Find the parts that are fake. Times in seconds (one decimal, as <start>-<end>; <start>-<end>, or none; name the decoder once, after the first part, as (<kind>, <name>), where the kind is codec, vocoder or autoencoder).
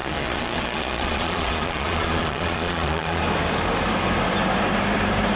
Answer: 0.0-3.2 (vocoder, Vocos)